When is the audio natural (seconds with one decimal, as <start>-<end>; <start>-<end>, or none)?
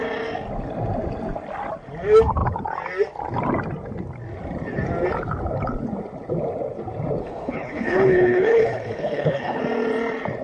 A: 0.0-7.2; 9.6-10.4